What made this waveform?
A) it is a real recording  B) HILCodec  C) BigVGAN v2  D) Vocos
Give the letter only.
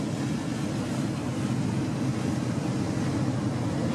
A